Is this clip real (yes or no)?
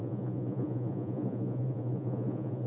no